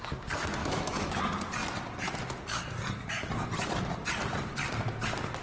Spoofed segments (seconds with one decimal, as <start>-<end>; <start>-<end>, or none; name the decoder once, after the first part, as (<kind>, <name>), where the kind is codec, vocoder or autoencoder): 0.6-1.2 (autoencoder, DAC-VAE)